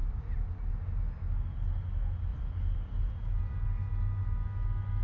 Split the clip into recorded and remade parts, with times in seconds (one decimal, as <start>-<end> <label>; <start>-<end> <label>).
0.0-0.7 remade; 0.7-2.3 recorded; 2.3-3.1 remade; 3.1-5.0 recorded